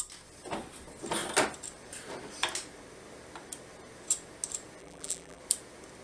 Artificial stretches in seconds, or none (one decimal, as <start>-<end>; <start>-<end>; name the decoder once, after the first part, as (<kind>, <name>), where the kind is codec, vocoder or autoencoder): 4.8-5.4 (vocoder, BigVGAN v2)